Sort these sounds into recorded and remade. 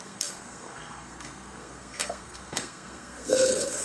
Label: remade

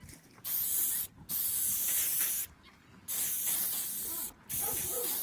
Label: recorded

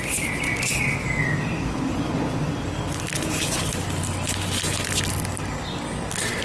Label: recorded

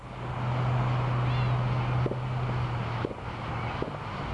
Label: recorded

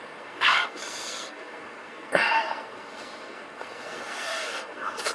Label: remade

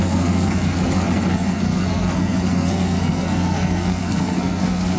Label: remade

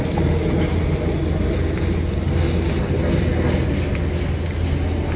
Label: recorded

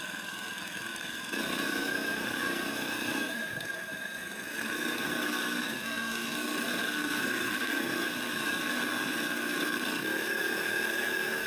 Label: remade